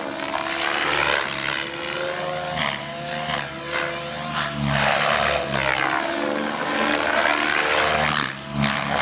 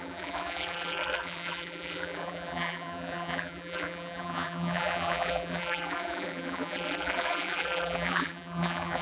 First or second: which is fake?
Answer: second